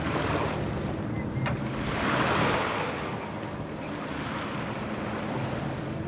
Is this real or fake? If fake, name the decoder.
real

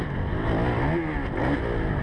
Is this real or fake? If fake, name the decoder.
real